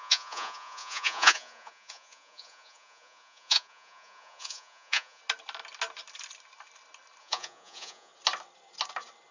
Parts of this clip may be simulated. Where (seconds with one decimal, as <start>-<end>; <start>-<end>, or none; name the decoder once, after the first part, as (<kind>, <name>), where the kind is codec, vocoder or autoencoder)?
0.0-5.2 (vocoder, Vocos); 7.2-8.1